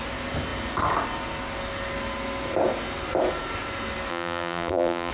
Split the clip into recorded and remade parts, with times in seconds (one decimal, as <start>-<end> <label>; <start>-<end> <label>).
0.0-4.1 recorded; 4.1-5.1 remade